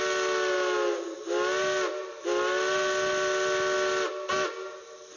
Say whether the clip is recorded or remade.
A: recorded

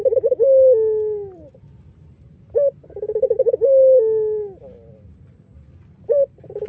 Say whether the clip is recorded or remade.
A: recorded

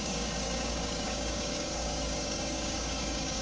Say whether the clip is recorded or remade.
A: remade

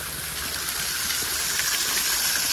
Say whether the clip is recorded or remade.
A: recorded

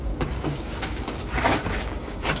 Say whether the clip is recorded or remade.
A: remade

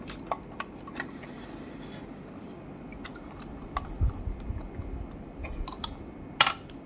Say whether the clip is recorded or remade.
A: recorded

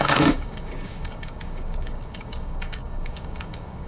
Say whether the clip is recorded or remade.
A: remade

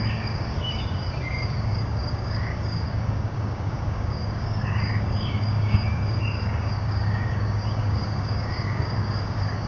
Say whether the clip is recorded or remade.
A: remade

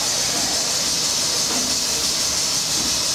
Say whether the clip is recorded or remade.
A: recorded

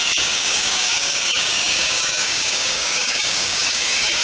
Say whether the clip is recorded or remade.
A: remade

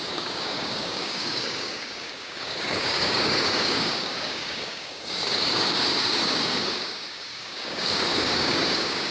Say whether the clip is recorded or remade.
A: remade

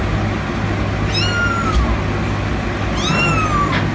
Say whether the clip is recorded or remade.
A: recorded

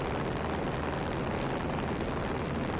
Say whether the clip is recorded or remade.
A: recorded